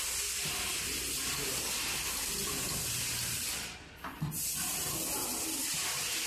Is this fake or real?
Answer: real